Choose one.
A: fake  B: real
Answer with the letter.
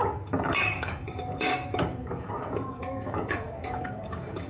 A